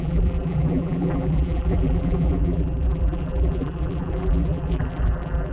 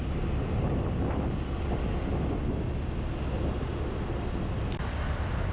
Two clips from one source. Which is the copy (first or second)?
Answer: first